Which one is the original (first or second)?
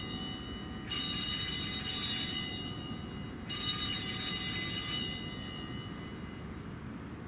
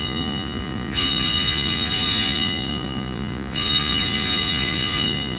first